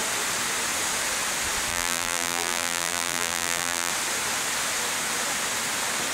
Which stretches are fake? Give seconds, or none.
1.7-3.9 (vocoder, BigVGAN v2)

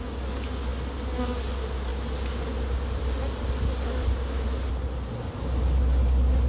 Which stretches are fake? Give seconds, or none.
none